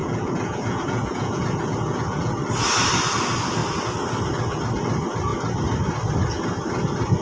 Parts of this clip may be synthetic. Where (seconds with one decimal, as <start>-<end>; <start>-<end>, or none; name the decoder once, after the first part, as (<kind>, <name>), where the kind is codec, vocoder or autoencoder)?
0.0-2.3 (vocoder, Vocos)